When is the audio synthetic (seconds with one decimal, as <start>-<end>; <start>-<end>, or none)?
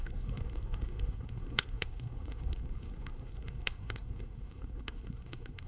0.0-5.7